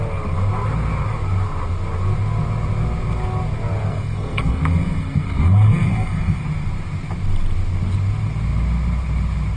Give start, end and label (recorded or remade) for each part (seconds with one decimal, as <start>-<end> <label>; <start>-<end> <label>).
0.0-3.9 recorded; 3.9-6.4 remade; 6.4-9.6 recorded